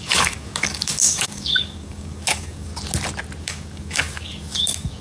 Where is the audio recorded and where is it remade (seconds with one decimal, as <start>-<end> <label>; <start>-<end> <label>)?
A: 0.0-2.7 remade; 2.7-3.4 recorded; 3.4-5.0 remade